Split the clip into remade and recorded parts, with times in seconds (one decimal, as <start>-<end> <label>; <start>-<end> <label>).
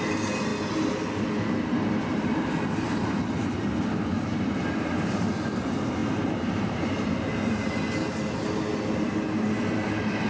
0.0-6.0 recorded; 6.0-7.7 remade; 7.7-10.3 recorded